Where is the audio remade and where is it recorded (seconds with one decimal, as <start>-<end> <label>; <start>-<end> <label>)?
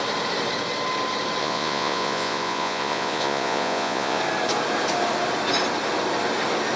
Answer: 0.0-1.4 recorded; 1.4-4.2 remade; 4.2-6.8 recorded